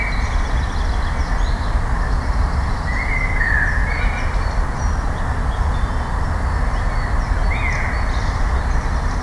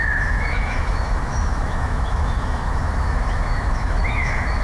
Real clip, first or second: first